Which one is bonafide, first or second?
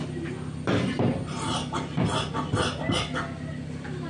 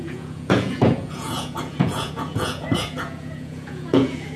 first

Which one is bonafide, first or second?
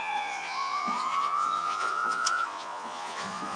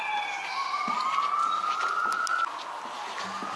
second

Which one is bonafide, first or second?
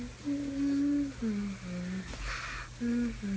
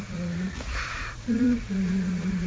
first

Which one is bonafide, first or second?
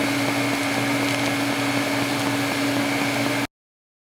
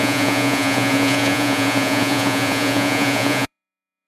first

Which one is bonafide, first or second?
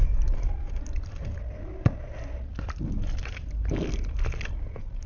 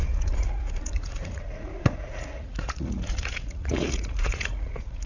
first